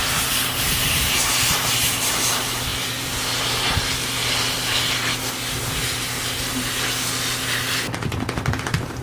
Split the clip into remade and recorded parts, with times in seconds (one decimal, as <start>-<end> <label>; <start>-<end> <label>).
0.0-4.2 remade; 4.2-8.6 recorded; 8.6-9.0 remade